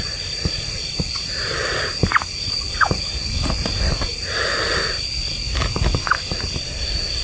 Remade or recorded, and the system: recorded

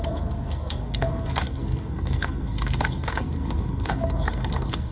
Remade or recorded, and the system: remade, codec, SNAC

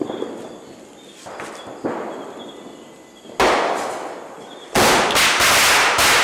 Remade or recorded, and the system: recorded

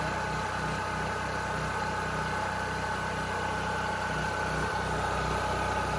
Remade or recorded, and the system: recorded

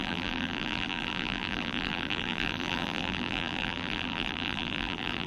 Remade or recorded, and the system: remade, vocoder, BigVGAN v2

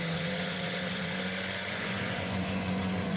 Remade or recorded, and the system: remade, vocoder, Vocos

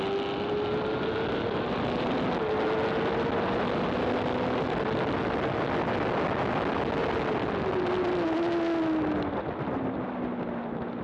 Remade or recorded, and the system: recorded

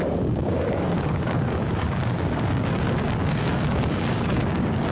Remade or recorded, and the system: remade, codec, DAC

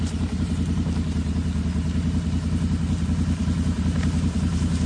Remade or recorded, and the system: recorded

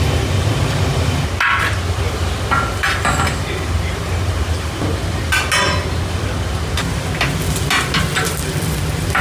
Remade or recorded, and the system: recorded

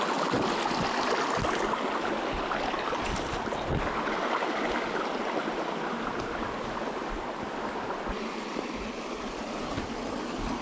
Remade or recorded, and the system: recorded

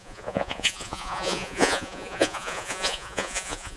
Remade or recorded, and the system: remade, vocoder, Vocos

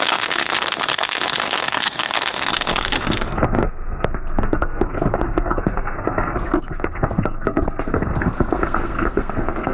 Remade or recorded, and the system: remade, codec, SNAC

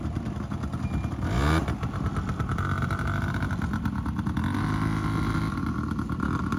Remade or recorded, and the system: recorded